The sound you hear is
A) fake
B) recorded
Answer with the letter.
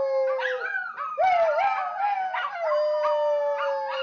B